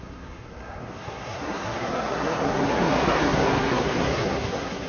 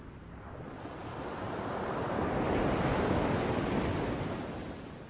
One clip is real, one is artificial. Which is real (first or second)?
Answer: second